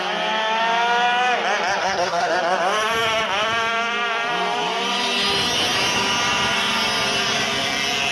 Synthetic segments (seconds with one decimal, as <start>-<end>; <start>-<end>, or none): 1.8-2.3